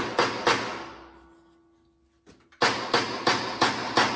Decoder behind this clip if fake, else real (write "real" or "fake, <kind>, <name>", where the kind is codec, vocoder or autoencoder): real